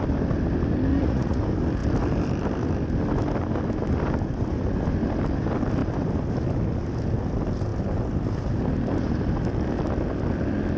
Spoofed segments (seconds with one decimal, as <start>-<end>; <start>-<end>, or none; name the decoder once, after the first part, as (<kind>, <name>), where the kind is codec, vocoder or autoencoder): 0.9-1.4 (vocoder, Vocos)